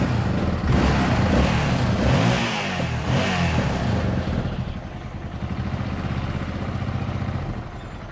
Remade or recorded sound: recorded